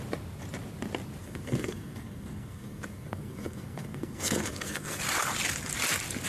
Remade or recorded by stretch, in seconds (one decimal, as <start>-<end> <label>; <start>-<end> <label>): 0.0-1.2 recorded; 1.2-5.0 remade; 5.0-6.3 recorded